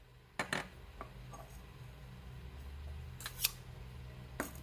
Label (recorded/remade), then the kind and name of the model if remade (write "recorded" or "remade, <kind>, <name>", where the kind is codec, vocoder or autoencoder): recorded